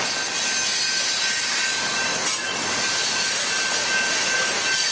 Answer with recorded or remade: recorded